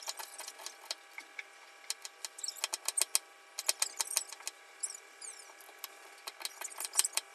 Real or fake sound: real